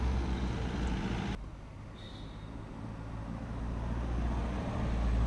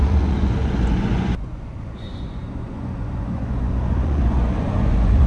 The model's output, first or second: second